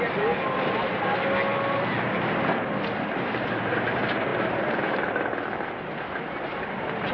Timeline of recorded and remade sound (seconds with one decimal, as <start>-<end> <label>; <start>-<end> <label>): 0.0-7.1 recorded